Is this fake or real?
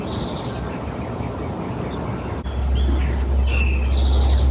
real